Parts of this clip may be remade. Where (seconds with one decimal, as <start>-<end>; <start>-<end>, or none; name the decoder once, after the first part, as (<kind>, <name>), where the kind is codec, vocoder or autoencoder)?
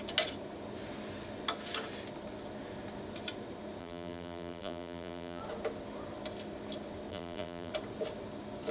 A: 3.8-5.4 (vocoder, BigVGAN v2); 7.1-7.7